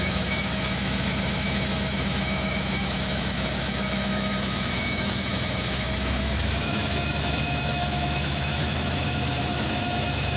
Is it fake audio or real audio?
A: fake